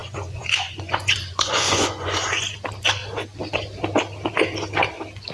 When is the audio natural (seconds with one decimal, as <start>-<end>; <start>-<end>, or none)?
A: 2.3-5.3